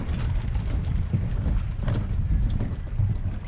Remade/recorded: recorded